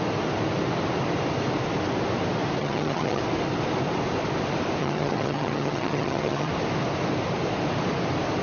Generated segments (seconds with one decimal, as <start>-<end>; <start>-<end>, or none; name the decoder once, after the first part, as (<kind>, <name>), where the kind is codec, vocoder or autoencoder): 2.6-3.2 (vocoder, HiFi-GAN); 4.8-6.5